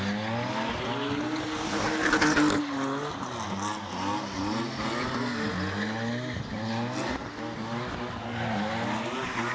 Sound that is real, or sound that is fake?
real